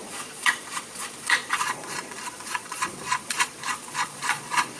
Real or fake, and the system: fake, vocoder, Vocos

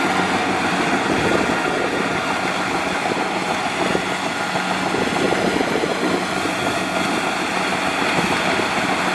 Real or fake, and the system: real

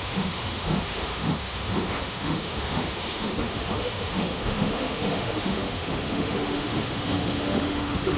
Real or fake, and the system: fake, autoencoder, DAC-VAE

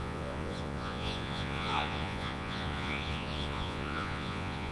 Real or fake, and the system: fake, vocoder, Vocos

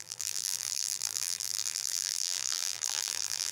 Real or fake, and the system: fake, vocoder, BigVGAN v2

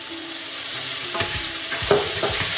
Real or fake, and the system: fake, vocoder, BigVGAN v2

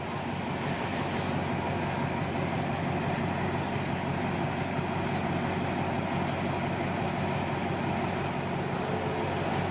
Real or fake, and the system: real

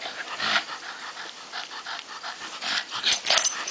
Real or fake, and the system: fake, vocoder, BigVGAN v2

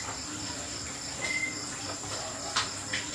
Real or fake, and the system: real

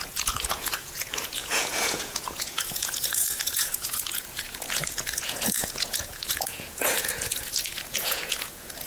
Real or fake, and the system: fake, vocoder, Vocos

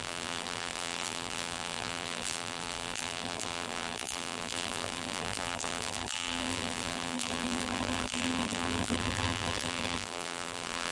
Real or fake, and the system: fake, vocoder, BigVGAN v2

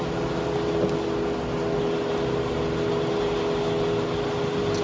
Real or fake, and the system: real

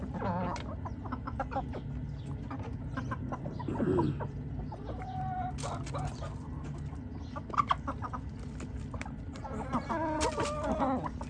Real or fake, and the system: real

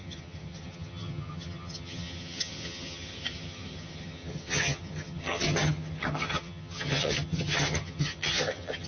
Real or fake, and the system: fake, vocoder, HiFi-GAN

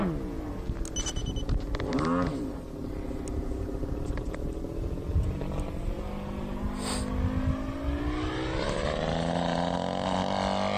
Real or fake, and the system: real